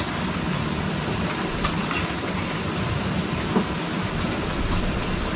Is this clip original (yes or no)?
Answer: yes